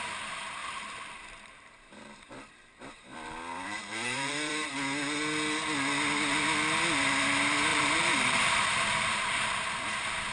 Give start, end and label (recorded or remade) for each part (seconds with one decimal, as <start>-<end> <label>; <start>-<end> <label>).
0.0-0.6 recorded; 0.6-4.7 remade; 4.7-7.7 recorded; 7.7-9.7 remade; 9.7-10.3 recorded